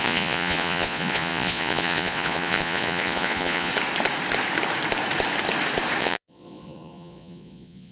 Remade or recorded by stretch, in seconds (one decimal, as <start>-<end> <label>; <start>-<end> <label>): 0.0-3.7 remade; 3.7-6.0 recorded; 6.0-7.9 remade